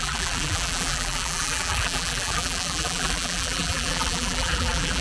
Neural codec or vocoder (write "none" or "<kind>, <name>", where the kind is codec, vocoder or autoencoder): vocoder, BigVGAN v2